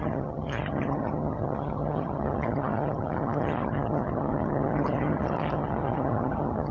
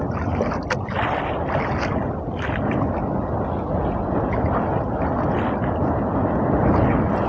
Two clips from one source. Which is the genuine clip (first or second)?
second